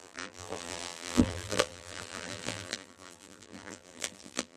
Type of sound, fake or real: fake